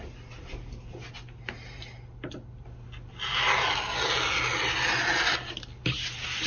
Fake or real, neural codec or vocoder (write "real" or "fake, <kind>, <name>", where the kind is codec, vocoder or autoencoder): real